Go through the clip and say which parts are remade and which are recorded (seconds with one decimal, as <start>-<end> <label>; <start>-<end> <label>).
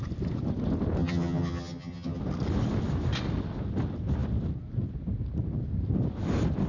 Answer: 0.0-1.0 recorded; 1.0-2.2 remade; 2.2-6.7 recorded